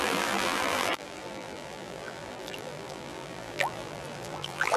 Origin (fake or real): fake